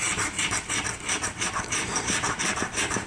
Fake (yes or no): yes